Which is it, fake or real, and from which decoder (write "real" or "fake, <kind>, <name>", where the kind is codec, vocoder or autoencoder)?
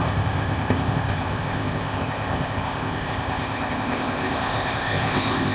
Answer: fake, codec, ZipCodec